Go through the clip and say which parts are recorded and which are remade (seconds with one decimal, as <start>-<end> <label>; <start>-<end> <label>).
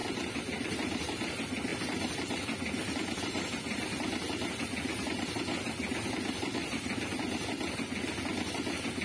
0.0-9.0 recorded